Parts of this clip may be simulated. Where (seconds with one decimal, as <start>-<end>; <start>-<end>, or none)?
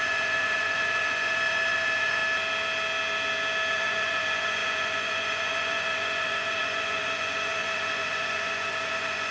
0.0-2.2; 3.7-9.3